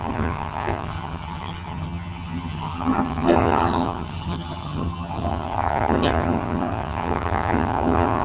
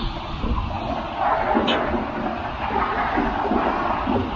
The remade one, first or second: first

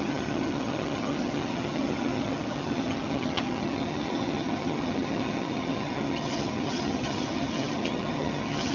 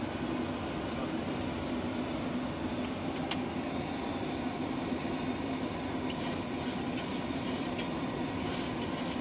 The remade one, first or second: first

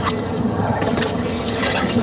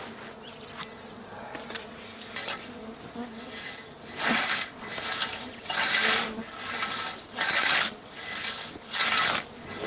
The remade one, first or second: first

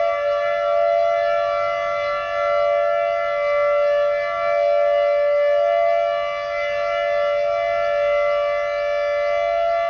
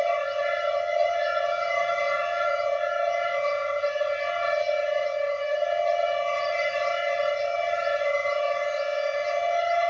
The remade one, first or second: second